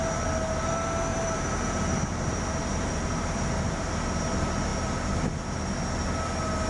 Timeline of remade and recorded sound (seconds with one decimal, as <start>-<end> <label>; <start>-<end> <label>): 0.0-1.1 recorded; 1.1-3.2 remade; 3.2-6.7 recorded